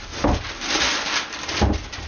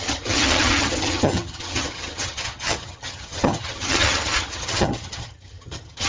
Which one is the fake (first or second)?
second